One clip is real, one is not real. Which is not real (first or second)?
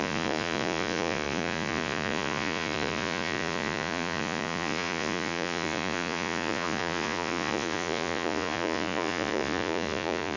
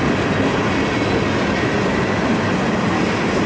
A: first